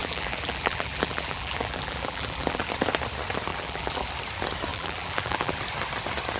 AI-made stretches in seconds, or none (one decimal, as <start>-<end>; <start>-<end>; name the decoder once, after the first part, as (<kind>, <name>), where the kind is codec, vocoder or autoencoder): 0.0-2.6 (vocoder, BigVGAN v2); 3.5-4.1; 4.7-5.6